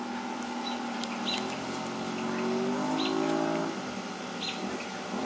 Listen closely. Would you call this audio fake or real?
real